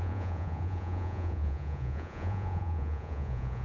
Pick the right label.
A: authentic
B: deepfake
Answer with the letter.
B